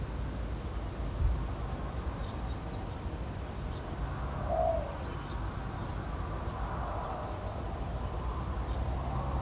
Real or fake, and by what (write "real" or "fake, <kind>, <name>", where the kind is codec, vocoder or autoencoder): real